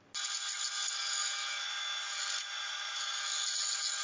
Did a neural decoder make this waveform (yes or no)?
no